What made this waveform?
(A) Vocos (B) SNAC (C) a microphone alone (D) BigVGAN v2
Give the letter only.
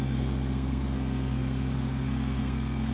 B